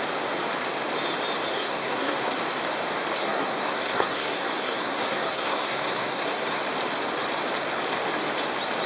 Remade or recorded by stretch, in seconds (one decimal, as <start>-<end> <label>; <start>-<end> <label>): 0.0-1.5 recorded; 1.5-2.4 remade; 2.4-3.2 recorded; 3.2-6.6 remade; 6.6-8.9 recorded